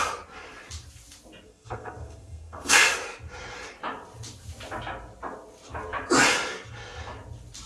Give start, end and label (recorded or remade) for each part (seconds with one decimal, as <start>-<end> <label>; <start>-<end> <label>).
0.0-1.5 recorded; 1.5-2.9 remade; 2.9-7.7 recorded